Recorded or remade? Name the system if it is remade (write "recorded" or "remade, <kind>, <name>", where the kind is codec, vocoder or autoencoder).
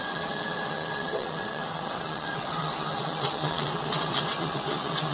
remade, vocoder, WaveNeXt